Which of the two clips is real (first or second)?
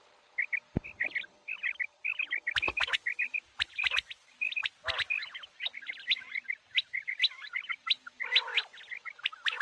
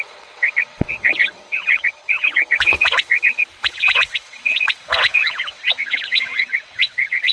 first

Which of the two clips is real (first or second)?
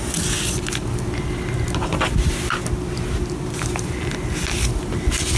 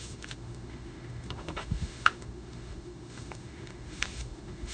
first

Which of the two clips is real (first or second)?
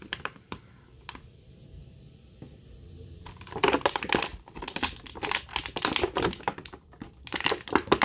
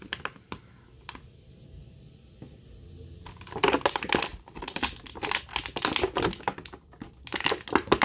second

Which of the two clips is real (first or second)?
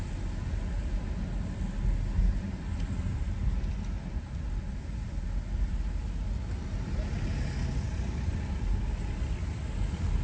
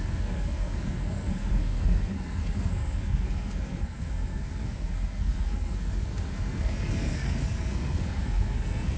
first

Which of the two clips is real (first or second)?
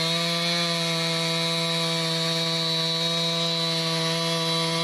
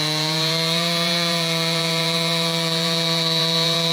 first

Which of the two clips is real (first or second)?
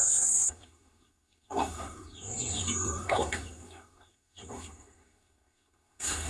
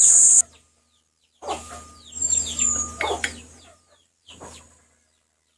second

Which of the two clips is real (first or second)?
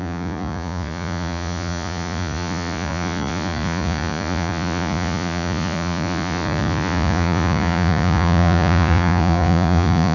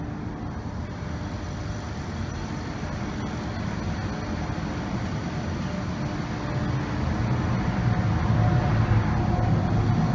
second